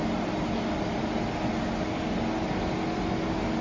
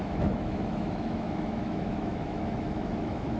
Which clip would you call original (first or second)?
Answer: first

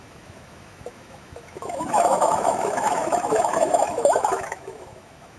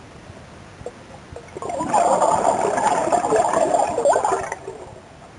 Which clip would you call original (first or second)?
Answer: second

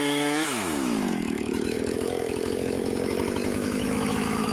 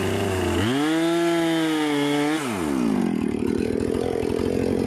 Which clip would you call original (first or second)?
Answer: second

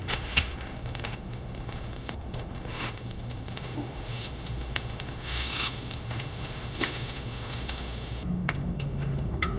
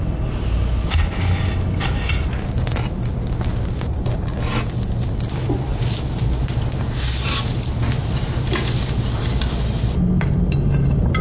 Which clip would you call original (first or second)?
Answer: second